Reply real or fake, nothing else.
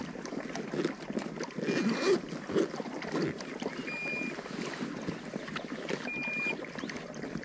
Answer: real